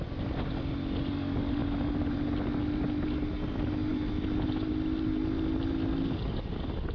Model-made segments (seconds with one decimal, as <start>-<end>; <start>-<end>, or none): none